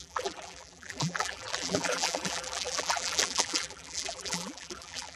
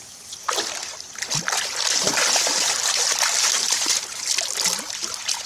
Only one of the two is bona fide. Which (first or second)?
second